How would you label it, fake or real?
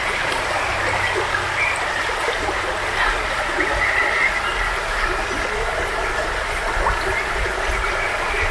real